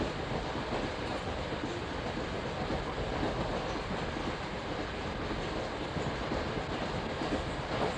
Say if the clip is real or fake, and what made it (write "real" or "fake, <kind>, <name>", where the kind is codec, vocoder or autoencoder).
real